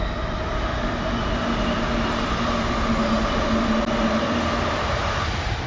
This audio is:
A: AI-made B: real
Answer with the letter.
B